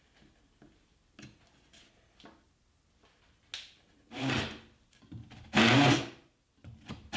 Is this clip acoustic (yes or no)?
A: yes